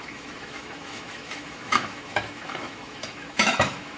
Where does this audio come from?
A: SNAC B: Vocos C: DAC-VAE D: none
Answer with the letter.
C